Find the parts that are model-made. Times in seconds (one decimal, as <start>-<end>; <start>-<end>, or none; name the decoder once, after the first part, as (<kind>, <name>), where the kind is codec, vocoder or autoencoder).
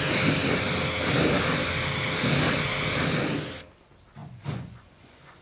4.2-5.4 (vocoder, Vocos)